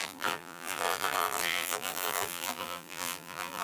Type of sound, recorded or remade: remade